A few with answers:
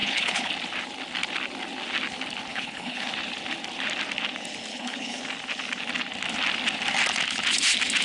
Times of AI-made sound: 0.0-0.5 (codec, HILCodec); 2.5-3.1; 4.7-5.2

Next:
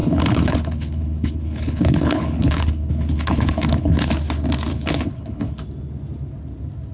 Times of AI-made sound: 0.0-4.1 (codec, HILCodec); 4.7-5.6